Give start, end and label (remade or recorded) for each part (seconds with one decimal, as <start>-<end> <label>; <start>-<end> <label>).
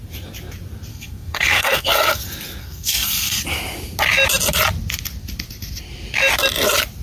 0.0-0.9 recorded; 0.9-2.2 remade; 2.2-2.6 recorded; 2.6-3.4 remade; 3.4-7.0 recorded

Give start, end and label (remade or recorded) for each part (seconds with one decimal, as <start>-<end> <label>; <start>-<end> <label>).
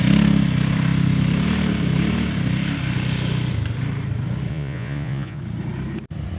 0.0-4.5 recorded; 4.5-5.4 remade; 5.4-6.4 recorded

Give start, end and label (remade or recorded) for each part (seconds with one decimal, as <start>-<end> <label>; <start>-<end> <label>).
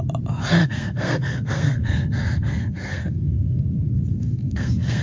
0.0-0.6 recorded; 0.6-3.6 remade; 3.6-4.1 recorded; 4.1-5.0 remade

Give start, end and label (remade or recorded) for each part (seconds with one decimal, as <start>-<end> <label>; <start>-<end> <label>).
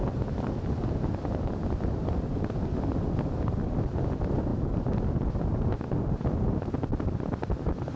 0.0-8.0 recorded